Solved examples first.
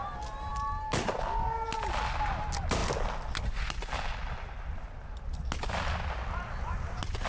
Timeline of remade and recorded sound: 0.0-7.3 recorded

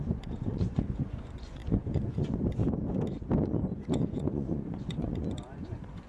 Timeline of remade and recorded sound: 0.0-2.6 remade; 2.6-3.4 recorded; 3.4-6.1 remade

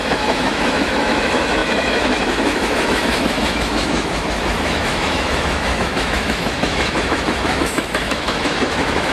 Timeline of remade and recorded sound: 0.0-9.1 remade

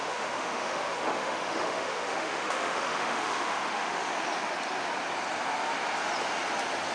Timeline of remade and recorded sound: 0.0-4.1 remade; 4.1-6.9 recorded

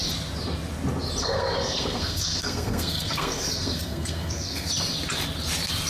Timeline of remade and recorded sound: 0.0-1.2 recorded; 1.2-4.7 remade; 4.7-5.9 recorded

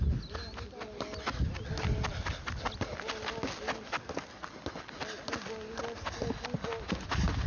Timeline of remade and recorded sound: 0.0-7.5 recorded

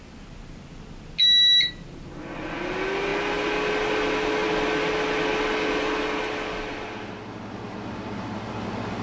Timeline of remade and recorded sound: 0.0-9.0 recorded

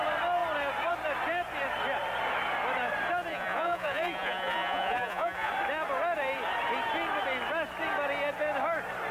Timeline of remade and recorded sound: 0.0-3.3 recorded; 3.3-5.5 remade; 5.5-9.1 recorded